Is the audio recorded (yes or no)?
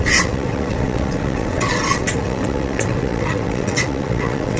no